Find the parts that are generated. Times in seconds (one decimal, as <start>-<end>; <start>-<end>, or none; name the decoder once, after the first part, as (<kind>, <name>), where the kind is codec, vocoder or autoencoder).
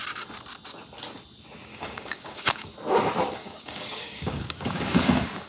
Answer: 1.7-2.7 (codec, DAC); 3.4-5.5